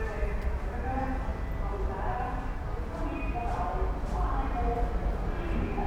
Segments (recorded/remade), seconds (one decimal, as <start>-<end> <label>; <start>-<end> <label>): 0.0-5.9 recorded